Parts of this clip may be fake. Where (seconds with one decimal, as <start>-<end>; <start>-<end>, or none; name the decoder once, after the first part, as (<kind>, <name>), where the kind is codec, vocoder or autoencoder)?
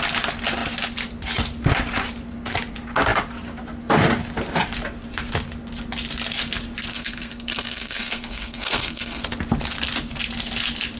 6.9-9.2 (codec, SNAC)